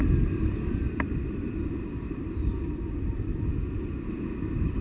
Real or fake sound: real